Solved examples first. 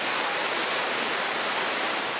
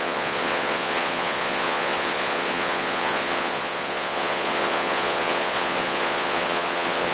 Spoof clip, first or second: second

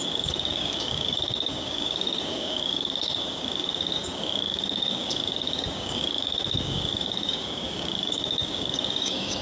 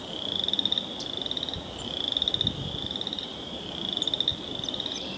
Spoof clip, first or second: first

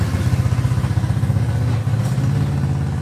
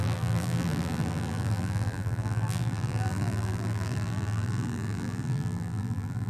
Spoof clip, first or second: second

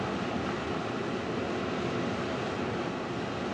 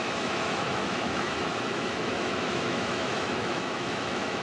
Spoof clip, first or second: second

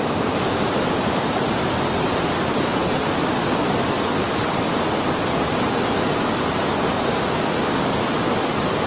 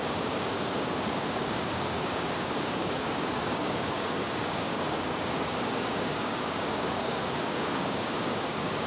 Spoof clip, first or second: second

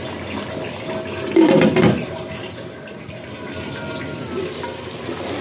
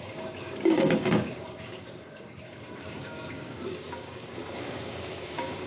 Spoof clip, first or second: second